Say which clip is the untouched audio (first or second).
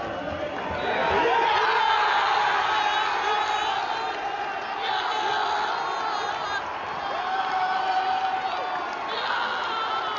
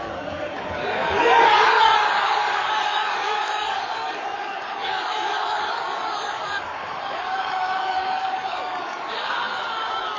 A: first